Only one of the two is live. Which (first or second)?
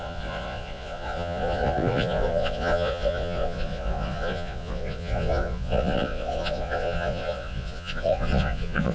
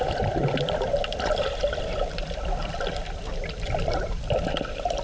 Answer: second